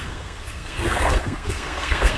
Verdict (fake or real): fake